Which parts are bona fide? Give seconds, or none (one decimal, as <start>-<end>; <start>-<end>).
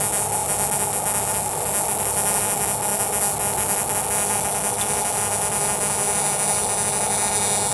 0.0-7.7